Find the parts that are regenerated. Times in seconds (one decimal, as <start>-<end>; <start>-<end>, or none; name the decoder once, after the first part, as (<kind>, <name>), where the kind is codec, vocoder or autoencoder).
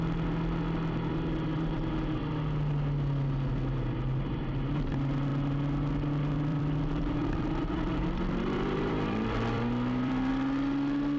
6.5-10.3 (vocoder, BigVGAN v2)